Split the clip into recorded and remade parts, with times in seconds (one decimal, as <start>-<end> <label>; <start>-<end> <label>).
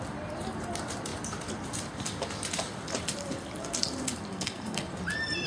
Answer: 0.0-4.3 recorded; 4.3-4.9 remade; 4.9-5.5 recorded